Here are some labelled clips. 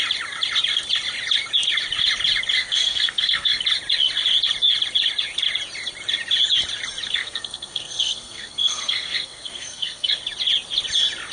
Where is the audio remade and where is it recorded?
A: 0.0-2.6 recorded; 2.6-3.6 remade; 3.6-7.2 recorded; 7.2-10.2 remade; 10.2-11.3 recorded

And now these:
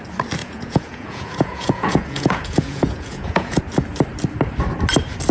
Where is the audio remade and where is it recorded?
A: 0.0-0.4 recorded; 0.4-3.6 remade; 3.6-5.3 recorded

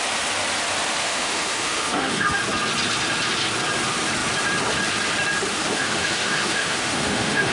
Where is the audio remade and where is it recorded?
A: 0.0-1.0 recorded; 1.0-2.4 remade; 2.4-5.5 recorded; 5.5-7.5 remade

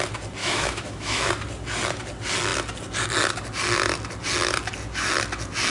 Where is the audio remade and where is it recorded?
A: 0.0-0.4 recorded; 0.4-1.3 remade; 1.3-5.7 recorded

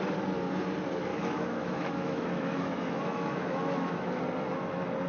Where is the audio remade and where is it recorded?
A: 0.0-1.1 recorded; 1.1-4.2 remade; 4.2-5.1 recorded

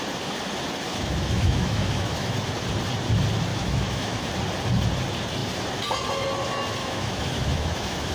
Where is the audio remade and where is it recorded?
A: 0.0-0.9 recorded; 0.9-2.5 remade; 2.5-3.5 recorded; 3.5-4.3 remade; 4.3-6.8 recorded; 6.8-8.1 remade

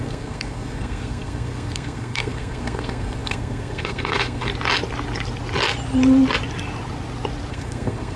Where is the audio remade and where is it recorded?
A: 0.0-4.5 remade; 4.5-7.5 recorded; 7.5-8.2 remade

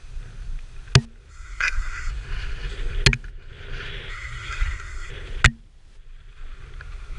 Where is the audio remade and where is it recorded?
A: 0.0-1.3 recorded; 1.3-2.1 remade; 2.1-4.1 recorded; 4.1-5.1 remade; 5.1-7.2 recorded